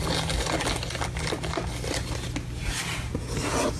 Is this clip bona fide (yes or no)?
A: yes